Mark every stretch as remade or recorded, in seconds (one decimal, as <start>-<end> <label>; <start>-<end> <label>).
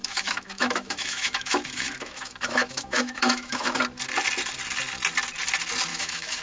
0.0-3.8 remade; 3.8-5.9 recorded; 5.9-6.4 remade